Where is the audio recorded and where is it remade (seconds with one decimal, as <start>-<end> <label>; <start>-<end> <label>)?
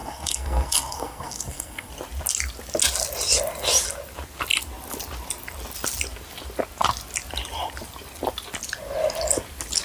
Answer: 0.0-1.9 remade; 1.9-9.8 recorded